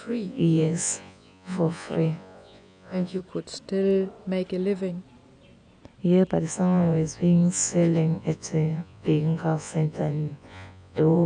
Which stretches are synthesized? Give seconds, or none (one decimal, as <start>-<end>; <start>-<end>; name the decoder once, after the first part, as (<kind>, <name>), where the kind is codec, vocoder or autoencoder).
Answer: 0.0-3.2 (vocoder, Vocos); 6.4-11.3